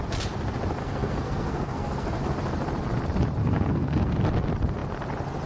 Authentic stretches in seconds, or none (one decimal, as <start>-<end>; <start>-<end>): 0.0-0.8; 2.2-3.4; 4.1-5.5